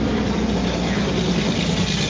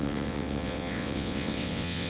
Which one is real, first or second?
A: first